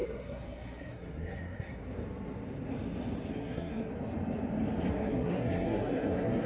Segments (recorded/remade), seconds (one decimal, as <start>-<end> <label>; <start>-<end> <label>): 0.0-1.8 remade; 1.8-3.3 recorded; 3.3-3.9 remade; 3.9-4.9 recorded; 4.9-6.5 remade